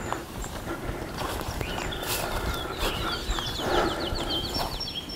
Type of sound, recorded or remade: remade